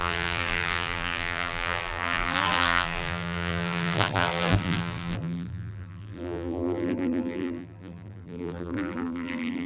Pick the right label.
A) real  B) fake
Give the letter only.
B